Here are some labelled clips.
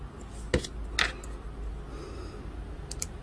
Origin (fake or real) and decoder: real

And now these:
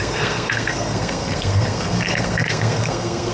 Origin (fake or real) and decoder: fake, codec, SNAC